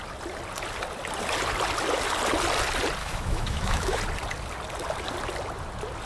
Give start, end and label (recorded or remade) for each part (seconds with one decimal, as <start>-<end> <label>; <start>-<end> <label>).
0.0-3.0 recorded; 3.0-4.0 remade; 4.0-6.1 recorded